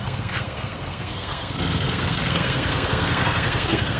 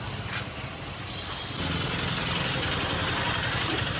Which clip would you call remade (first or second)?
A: first